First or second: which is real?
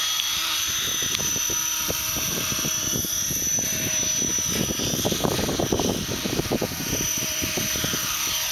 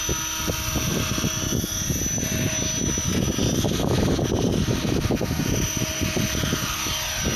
second